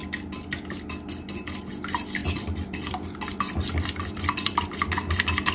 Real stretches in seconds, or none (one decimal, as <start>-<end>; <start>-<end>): 0.0-2.2; 4.6-5.5